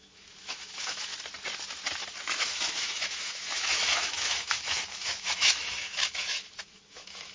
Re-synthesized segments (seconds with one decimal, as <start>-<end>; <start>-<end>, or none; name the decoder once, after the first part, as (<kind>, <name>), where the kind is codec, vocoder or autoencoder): 0.0-1.1 (autoencoder, DAC-VAE); 2.4-7.3